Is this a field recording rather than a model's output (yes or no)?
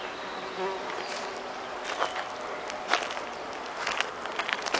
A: yes